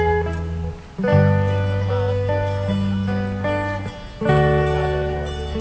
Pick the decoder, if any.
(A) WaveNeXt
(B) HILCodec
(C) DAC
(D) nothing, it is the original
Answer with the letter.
D